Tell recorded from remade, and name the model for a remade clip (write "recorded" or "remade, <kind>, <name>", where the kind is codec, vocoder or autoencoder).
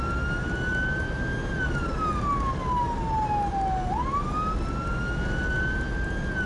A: recorded